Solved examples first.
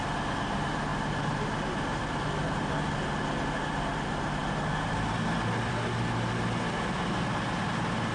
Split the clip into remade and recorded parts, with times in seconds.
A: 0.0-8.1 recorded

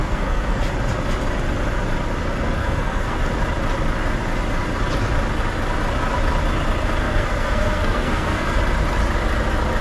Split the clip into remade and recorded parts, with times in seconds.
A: 0.0-0.6 remade; 0.6-2.6 recorded; 2.6-3.2 remade; 3.2-7.0 recorded; 7.0-8.6 remade; 8.6-9.8 recorded

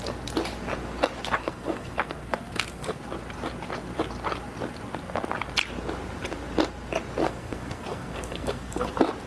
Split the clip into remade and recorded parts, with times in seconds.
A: 0.0-1.4 recorded; 1.4-3.0 remade; 3.0-7.2 recorded; 7.2-8.9 remade; 8.9-9.3 recorded

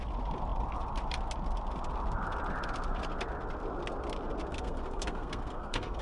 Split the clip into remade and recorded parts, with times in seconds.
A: 0.0-4.5 recorded; 4.5-6.0 remade

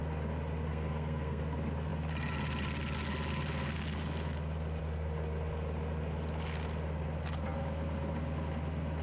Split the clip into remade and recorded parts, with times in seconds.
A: 0.0-0.7 recorded; 0.7-1.4 remade; 1.4-9.0 recorded

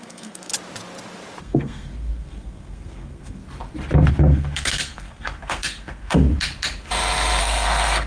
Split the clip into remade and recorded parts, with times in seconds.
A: 0.0-0.5 remade; 0.5-1.4 recorded; 1.4-3.4 remade; 3.4-4.1 recorded; 4.1-6.3 remade; 6.3-7.4 recorded; 7.4-8.1 remade

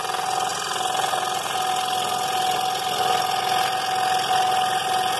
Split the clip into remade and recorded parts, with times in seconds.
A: 0.0-5.2 recorded